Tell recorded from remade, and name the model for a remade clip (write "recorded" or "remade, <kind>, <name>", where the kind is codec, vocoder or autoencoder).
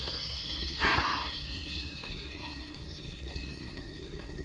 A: remade, codec, SNAC